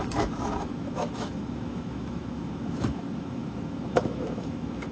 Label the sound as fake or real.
fake